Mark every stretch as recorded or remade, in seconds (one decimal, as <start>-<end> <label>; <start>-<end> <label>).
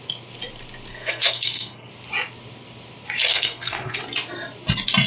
0.0-0.9 recorded; 0.9-1.9 remade; 1.9-3.3 recorded; 3.3-4.0 remade; 4.0-5.1 recorded